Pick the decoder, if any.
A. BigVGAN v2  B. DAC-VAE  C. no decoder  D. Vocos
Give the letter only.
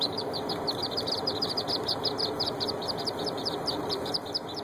A